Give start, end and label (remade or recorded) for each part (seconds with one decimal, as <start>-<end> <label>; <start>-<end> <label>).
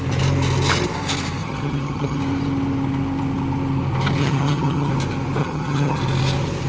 0.0-1.4 recorded; 1.4-2.2 remade; 2.2-4.2 recorded; 4.2-4.9 remade; 4.9-5.4 recorded; 5.4-6.0 remade; 6.0-6.7 recorded